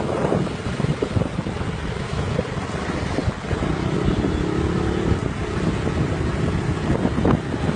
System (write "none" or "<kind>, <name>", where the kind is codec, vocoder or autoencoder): none